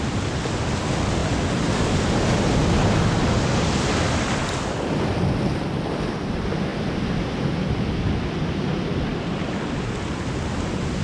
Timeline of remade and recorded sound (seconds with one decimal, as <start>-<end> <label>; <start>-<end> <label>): 0.0-11.0 recorded